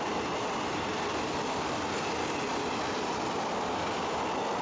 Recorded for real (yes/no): yes